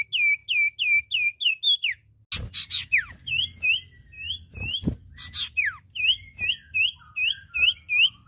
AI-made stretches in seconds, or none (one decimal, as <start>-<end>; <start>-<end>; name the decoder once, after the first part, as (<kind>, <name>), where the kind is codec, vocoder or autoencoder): none